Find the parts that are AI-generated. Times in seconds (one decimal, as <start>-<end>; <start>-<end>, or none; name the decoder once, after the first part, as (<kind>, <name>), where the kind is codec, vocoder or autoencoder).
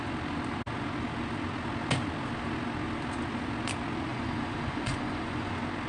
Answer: 4.1-5.5 (vocoder, Vocos)